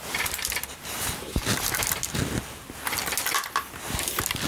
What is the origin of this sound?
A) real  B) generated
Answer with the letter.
A